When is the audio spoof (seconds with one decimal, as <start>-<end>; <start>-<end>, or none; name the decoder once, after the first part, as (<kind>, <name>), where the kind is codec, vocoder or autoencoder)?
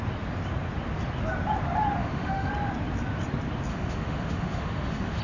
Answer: 2.0-2.5 (autoencoder, DAC-VAE); 3.7-5.2